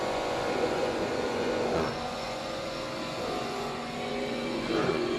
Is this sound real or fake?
fake